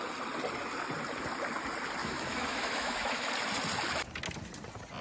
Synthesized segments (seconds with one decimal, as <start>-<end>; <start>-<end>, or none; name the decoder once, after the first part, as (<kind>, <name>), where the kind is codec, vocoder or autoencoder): 2.0-3.3 (autoencoder, DAC-VAE)